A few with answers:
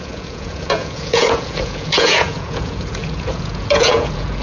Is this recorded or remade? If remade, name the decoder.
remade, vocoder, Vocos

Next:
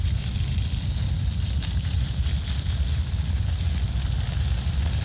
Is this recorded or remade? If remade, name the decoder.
recorded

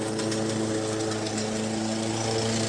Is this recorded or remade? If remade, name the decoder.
recorded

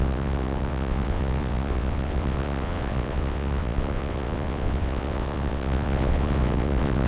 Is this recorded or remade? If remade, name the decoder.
remade, vocoder, WaveNeXt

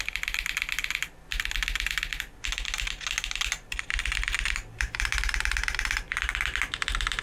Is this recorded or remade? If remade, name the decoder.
recorded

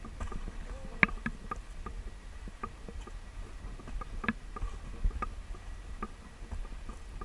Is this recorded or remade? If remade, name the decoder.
recorded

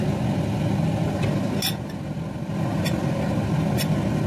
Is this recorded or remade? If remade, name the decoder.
recorded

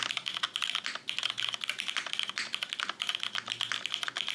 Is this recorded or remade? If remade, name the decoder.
recorded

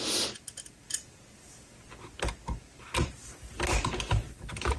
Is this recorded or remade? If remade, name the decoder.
recorded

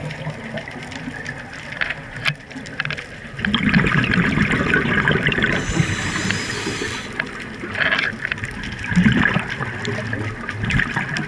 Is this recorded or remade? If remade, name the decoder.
recorded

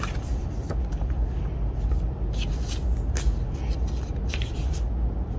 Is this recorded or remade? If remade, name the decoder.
recorded